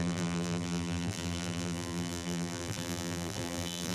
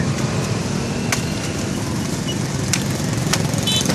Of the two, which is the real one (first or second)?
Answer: second